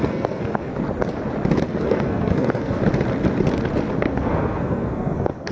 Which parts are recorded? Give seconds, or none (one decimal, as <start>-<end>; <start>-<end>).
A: 0.7-1.8; 2.8-4.0